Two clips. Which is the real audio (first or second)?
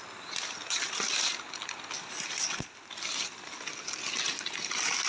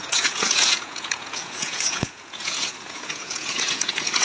first